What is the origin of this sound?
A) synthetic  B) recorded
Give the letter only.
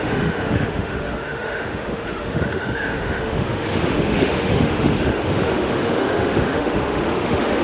A